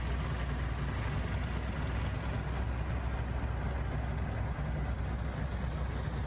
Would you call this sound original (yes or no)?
yes